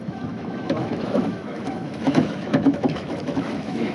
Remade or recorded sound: remade